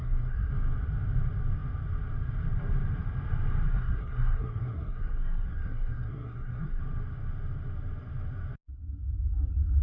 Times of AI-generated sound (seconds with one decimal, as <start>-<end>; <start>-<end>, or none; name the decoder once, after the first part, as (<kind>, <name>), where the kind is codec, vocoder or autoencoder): 0.0-0.5 (codec, SNAC); 3.7-6.8